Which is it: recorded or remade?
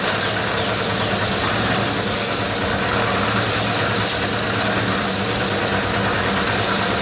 recorded